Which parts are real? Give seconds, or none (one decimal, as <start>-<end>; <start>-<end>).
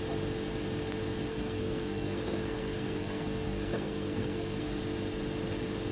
0.0-1.3; 4.8-5.9